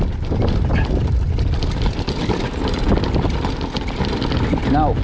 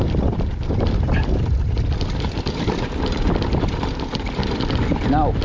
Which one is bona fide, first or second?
first